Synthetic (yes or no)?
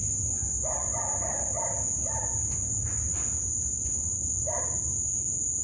no